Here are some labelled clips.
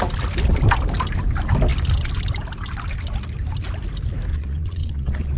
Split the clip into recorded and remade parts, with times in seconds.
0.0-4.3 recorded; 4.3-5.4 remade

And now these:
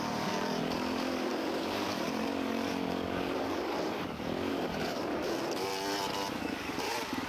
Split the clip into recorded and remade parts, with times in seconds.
0.0-5.7 remade; 5.7-6.4 recorded; 6.4-7.3 remade

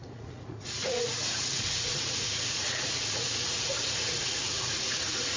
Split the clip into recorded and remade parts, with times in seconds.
0.0-5.4 remade

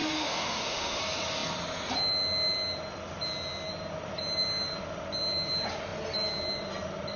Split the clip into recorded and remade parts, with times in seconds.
0.0-1.0 remade; 1.0-7.2 recorded